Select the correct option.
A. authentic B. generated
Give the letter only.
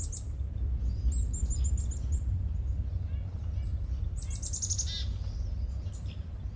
A